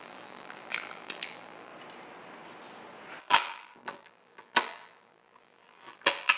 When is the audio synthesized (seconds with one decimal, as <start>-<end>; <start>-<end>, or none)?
0.0-1.7; 3.2-6.4